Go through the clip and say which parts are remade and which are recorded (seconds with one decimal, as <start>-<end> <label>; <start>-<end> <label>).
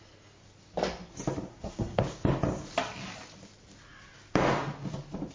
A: 0.0-1.5 recorded; 1.5-2.0 remade; 2.0-5.3 recorded